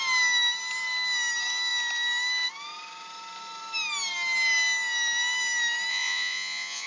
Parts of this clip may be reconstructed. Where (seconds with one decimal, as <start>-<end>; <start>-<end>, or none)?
5.9-6.9